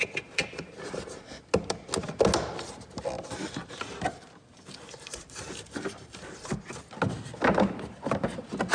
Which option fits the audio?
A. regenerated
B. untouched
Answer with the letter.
B